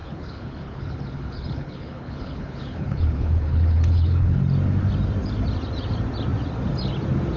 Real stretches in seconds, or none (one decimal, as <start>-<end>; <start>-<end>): 4.4-7.4